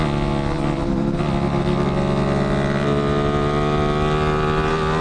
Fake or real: real